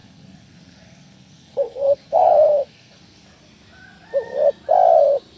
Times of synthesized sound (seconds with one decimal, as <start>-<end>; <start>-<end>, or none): 0.0-3.2